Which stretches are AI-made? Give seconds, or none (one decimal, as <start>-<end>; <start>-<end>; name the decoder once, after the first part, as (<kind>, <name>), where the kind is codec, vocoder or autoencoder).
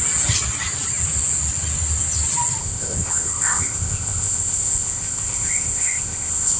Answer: 2.6-6.6 (codec, ZipCodec)